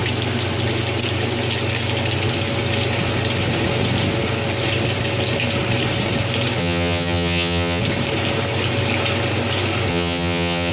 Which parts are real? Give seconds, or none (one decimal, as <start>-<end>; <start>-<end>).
0.0-6.6; 7.8-9.9

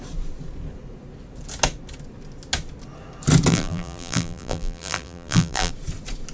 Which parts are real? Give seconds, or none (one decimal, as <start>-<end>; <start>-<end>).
0.0-3.5; 5.7-6.3

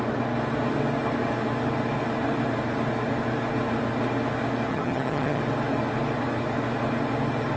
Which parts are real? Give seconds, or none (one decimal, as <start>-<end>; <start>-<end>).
0.0-4.7; 5.4-7.6

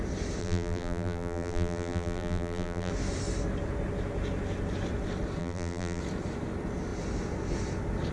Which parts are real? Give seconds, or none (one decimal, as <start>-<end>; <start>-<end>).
0.0-0.4; 2.9-5.4; 6.0-8.1

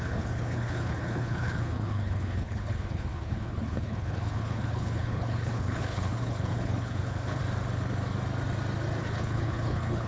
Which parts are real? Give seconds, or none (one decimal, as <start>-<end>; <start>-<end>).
7.4-9.0